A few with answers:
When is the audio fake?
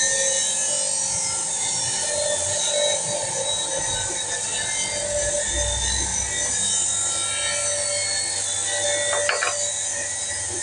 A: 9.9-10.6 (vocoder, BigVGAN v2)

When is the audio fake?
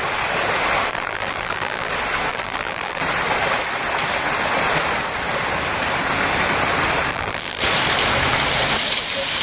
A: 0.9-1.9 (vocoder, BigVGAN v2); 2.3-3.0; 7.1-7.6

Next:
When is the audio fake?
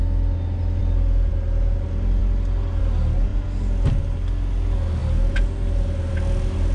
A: none